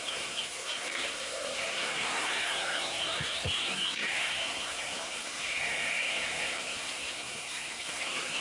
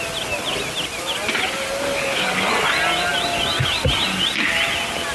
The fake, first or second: first